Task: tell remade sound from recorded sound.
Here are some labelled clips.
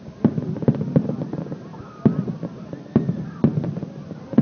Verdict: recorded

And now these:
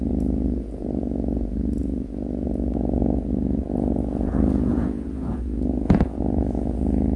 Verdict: remade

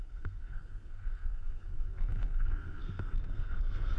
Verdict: remade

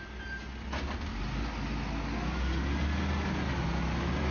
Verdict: recorded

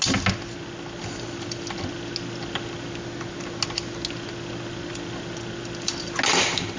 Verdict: recorded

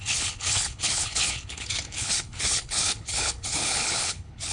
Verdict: remade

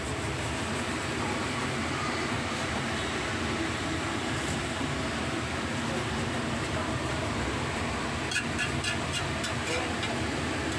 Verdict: remade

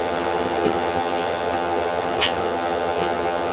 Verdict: remade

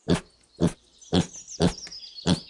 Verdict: recorded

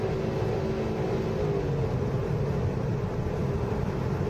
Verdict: recorded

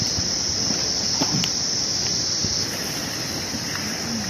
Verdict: remade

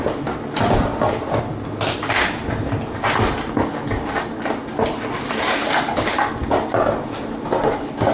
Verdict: recorded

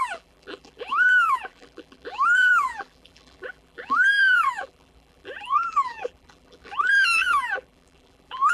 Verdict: remade